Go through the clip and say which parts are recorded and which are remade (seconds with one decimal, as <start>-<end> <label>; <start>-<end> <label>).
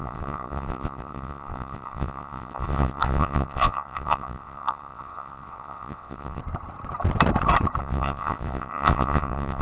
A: 0.0-6.4 remade; 6.4-7.8 recorded; 7.8-9.6 remade